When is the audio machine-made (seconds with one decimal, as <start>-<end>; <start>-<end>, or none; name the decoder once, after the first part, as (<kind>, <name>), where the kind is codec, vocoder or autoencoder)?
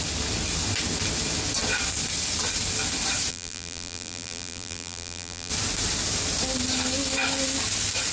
3.3-5.5 (vocoder, BigVGAN v2)